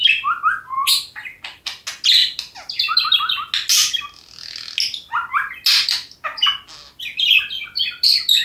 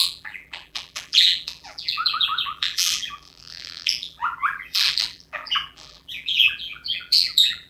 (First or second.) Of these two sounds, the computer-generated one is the second